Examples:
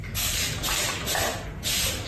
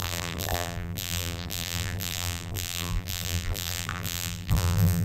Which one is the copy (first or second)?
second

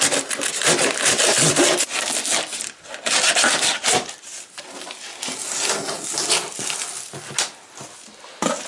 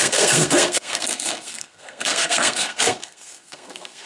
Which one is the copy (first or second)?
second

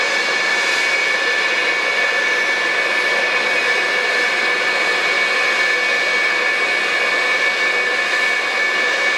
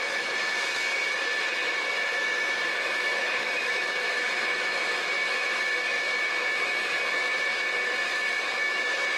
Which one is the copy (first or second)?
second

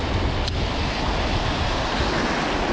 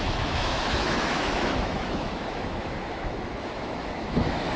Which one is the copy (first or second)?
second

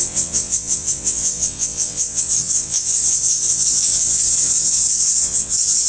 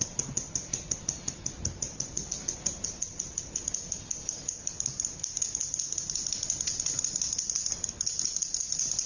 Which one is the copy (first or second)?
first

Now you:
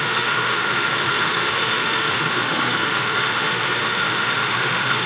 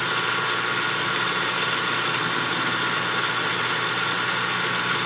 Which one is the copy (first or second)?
first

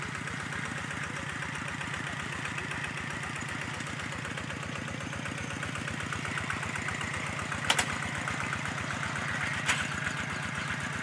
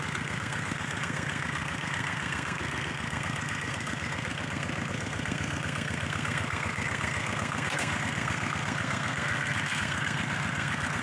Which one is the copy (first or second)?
second